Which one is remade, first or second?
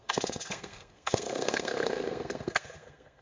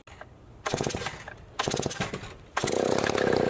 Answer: first